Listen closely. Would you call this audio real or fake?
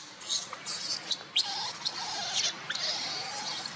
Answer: real